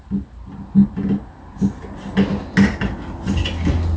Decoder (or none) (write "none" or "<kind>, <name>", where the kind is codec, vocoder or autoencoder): none